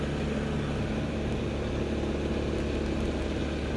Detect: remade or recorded recorded